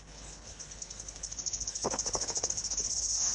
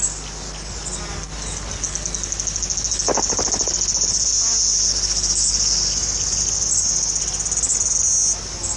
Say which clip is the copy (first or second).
first